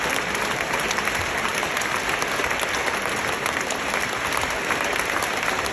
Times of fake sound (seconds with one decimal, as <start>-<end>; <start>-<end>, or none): 1.5-2.0